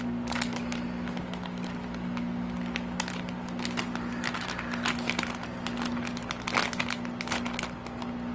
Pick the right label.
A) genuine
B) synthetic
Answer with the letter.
A